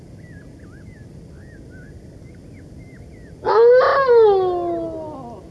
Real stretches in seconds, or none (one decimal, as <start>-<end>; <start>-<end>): 0.0-5.5